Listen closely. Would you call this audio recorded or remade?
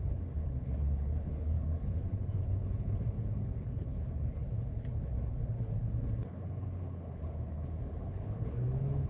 remade